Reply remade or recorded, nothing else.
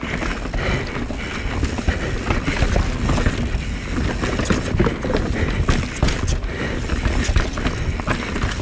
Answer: recorded